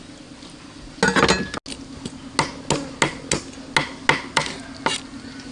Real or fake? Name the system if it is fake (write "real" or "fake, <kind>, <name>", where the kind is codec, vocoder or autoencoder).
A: real